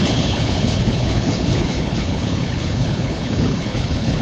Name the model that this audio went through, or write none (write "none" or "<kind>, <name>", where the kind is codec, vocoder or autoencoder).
codec, HILCodec